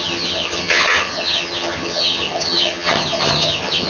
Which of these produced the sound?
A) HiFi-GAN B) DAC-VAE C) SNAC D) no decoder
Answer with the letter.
A